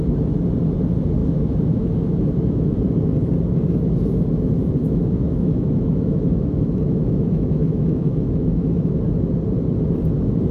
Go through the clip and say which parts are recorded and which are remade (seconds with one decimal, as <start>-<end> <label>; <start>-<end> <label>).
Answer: 0.0-1.2 recorded; 1.2-2.7 remade; 2.7-4.8 recorded; 4.8-9.0 remade; 9.0-10.5 recorded